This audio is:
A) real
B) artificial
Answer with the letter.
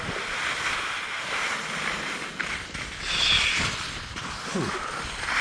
A